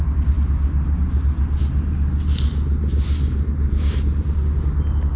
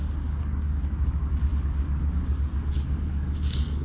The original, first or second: first